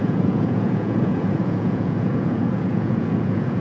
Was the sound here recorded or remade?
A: remade